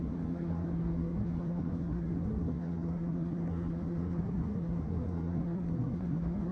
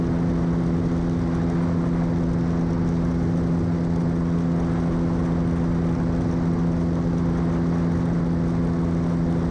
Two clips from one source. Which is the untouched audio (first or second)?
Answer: second